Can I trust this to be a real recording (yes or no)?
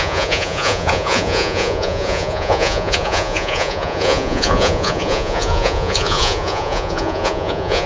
no